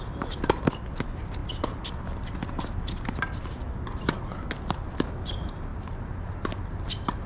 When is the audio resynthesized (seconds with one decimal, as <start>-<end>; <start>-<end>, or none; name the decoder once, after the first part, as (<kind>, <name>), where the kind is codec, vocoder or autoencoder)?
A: none